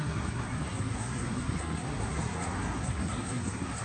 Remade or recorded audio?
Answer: remade